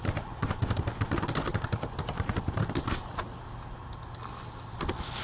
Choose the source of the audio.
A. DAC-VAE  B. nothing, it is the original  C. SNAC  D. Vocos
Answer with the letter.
B